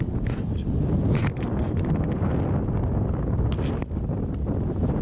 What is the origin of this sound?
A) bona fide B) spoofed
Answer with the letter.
A